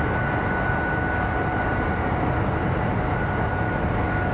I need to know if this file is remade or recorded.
recorded